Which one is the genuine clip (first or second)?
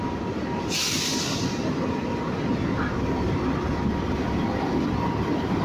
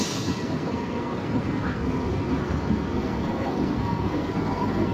first